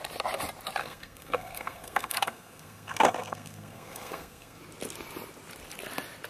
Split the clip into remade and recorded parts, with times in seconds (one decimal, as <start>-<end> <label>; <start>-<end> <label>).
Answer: 0.0-0.8 recorded; 0.8-4.6 remade; 4.6-6.3 recorded